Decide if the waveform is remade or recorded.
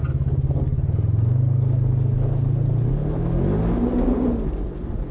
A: recorded